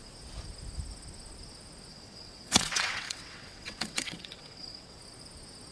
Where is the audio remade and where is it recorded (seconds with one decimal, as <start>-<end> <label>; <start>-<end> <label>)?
0.0-1.9 recorded; 1.9-5.0 remade; 5.0-5.7 recorded